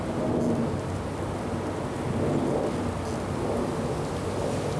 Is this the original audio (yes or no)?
yes